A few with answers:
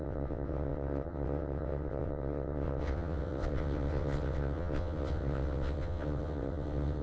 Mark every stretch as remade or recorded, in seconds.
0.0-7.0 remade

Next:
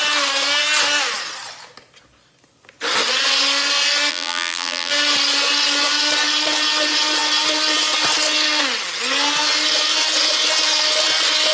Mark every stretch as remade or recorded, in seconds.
0.0-4.1 recorded; 4.1-4.9 remade; 4.9-11.5 recorded

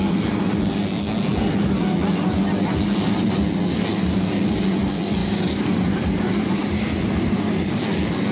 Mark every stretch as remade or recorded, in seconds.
0.0-5.2 recorded; 5.2-7.8 remade; 7.8-8.3 recorded

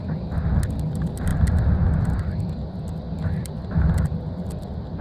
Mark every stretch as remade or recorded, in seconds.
0.0-5.0 recorded